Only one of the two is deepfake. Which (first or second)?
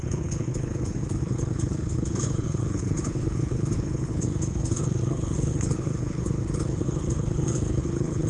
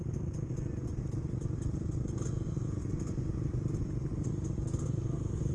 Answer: first